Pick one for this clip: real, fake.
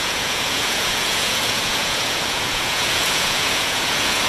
fake